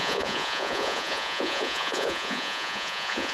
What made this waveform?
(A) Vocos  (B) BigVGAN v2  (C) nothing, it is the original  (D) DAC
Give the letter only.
A